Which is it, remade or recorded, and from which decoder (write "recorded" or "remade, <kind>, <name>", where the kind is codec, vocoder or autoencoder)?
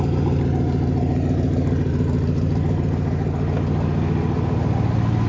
recorded